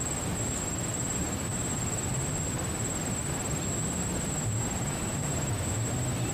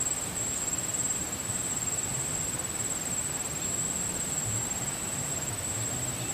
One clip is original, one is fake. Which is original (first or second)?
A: first